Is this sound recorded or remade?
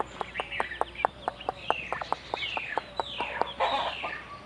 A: remade